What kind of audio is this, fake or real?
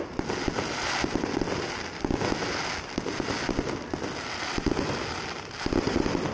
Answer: real